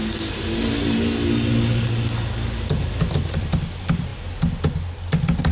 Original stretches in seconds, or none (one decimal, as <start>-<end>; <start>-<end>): 0.0-5.5